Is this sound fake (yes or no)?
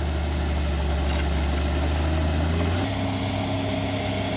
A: no